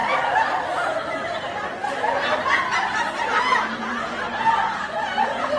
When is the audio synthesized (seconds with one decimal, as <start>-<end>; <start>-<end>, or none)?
none